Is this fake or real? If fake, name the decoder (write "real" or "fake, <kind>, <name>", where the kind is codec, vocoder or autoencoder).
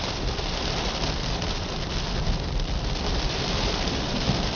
fake, vocoder, BigVGAN v2